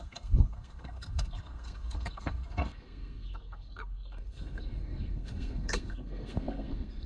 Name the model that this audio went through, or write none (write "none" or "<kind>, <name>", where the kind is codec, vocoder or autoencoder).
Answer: codec, SNAC